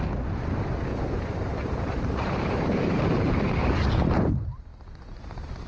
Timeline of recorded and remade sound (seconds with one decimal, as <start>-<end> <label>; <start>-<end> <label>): 0.0-0.9 recorded; 0.9-4.3 remade; 4.3-5.7 recorded

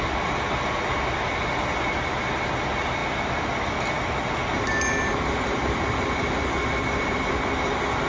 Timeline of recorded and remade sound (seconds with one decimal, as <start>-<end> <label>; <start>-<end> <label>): 0.0-8.1 recorded